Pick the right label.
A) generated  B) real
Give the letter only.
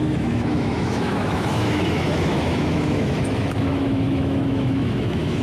A